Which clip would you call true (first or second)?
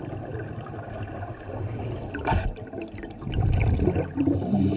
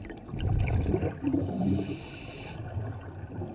first